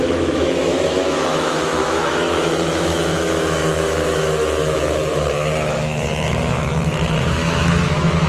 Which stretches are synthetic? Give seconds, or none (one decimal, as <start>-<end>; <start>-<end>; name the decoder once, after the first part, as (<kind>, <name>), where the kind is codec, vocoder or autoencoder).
0.0-8.3 (autoencoder, DAC-VAE)